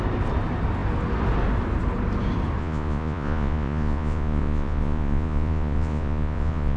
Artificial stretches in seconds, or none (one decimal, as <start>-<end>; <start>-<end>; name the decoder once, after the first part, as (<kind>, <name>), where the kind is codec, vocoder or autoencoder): 2.6-6.8 (vocoder, Vocos)